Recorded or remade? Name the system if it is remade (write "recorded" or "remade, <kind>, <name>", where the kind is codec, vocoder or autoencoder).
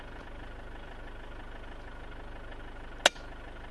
recorded